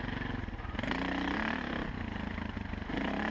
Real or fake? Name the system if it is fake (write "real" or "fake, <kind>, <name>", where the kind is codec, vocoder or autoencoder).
real